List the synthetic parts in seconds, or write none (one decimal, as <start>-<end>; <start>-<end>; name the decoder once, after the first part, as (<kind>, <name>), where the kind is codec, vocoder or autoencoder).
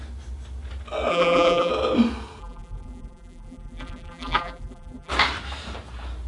1.1-1.7 (vocoder, BigVGAN v2); 2.4-5.1